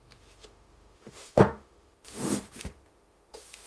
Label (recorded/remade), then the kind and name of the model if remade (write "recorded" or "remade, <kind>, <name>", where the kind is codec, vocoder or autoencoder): remade, autoencoder, DAC-VAE